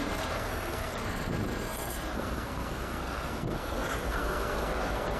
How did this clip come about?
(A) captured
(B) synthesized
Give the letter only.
B